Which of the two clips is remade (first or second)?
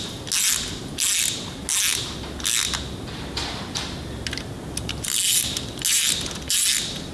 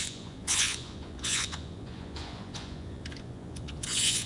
second